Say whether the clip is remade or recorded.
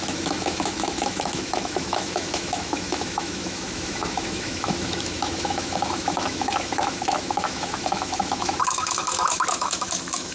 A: remade